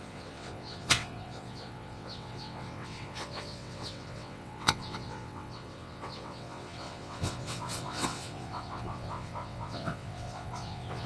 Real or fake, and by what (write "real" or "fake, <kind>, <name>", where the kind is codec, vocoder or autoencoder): fake, vocoder, WaveNeXt